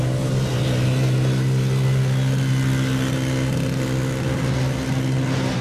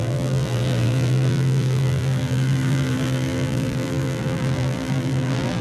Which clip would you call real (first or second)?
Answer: first